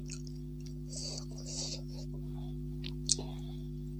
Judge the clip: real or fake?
real